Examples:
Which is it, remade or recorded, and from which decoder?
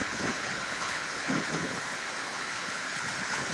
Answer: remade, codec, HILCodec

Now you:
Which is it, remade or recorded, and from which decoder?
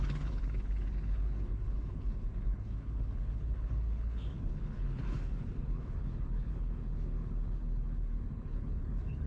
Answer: remade, codec, HILCodec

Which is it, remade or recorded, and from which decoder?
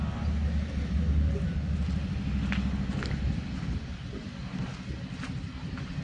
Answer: recorded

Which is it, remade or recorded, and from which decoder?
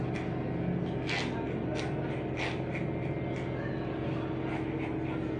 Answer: recorded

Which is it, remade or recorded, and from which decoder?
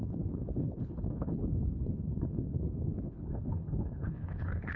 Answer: remade, codec, HILCodec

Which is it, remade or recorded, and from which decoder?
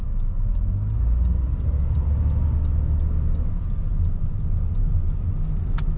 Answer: recorded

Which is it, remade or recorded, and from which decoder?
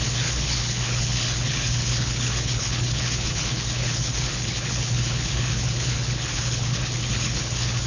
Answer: remade, codec, HILCodec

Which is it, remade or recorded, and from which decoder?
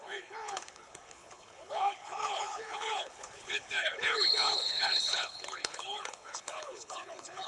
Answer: remade, codec, HILCodec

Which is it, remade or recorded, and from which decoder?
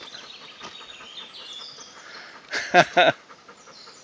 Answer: recorded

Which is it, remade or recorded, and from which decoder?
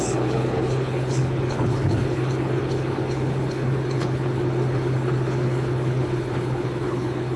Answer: remade, codec, HILCodec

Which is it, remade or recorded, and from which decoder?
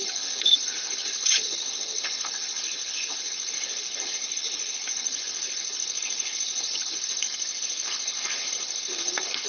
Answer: remade, codec, HILCodec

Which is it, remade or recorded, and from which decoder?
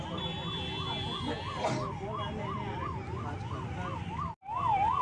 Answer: recorded